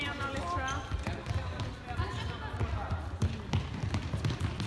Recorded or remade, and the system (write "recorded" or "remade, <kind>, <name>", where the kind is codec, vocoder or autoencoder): recorded